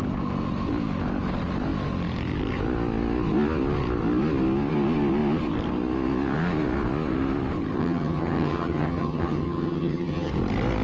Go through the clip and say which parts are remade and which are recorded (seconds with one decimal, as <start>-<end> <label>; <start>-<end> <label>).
0.0-7.8 recorded; 7.8-10.3 remade; 10.3-10.8 recorded